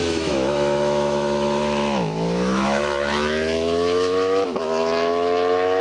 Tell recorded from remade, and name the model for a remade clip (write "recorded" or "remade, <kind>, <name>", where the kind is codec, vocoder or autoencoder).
remade, autoencoder, DAC-VAE